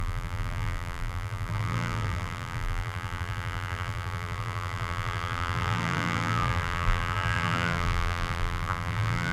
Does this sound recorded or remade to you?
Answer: remade